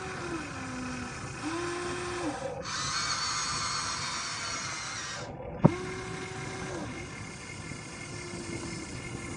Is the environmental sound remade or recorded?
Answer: recorded